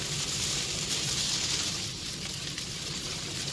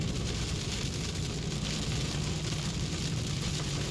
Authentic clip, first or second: second